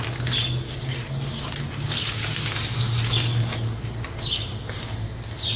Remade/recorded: recorded